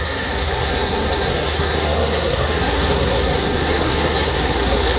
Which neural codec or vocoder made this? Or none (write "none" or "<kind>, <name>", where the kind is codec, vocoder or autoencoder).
codec, SNAC